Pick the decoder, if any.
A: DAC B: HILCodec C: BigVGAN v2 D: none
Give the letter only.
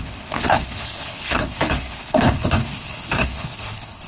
B